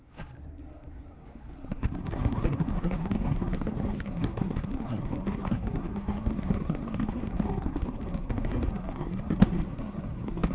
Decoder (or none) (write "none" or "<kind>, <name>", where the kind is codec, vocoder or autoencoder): codec, SNAC